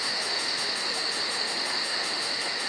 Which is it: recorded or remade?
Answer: remade